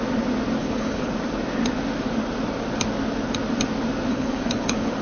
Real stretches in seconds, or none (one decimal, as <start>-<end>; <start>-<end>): 0.0-0.6; 1.1-4.1